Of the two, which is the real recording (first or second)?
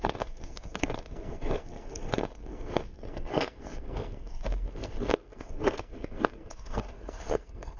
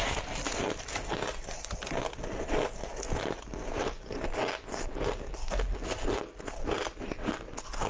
second